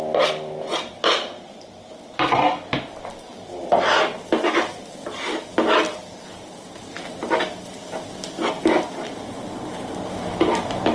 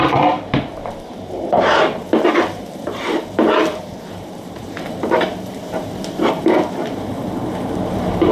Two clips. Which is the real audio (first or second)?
first